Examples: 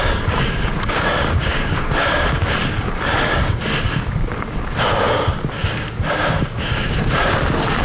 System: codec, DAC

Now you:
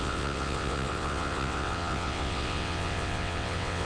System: vocoder, WaveNeXt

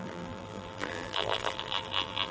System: vocoder, BigVGAN v2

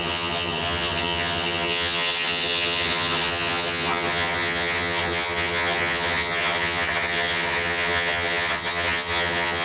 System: vocoder, HiFi-GAN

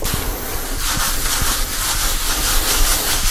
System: none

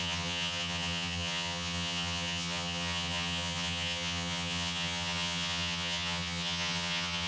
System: vocoder, HiFi-GAN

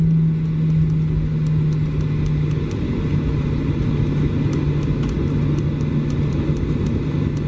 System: none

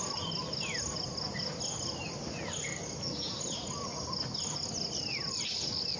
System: none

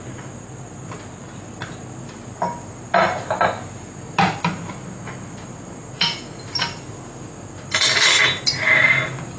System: none